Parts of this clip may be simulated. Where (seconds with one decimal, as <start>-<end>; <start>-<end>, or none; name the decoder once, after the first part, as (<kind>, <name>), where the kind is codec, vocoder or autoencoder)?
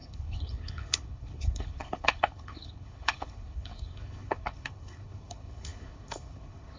0.0-6.8 (codec, HILCodec)